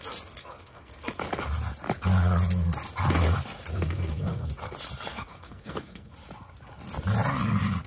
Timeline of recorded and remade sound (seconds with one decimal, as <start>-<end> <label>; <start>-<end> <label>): 0.0-0.4 recorded; 0.4-0.9 remade; 0.9-3.7 recorded; 3.7-4.5 remade; 4.5-5.1 recorded; 5.1-6.1 remade; 6.1-7.9 recorded